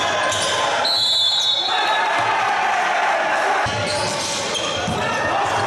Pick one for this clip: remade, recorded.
recorded